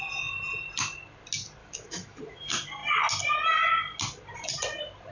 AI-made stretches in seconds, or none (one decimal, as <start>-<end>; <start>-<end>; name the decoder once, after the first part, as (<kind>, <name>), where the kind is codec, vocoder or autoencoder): 1.6-2.2 (autoencoder, DAC-VAE)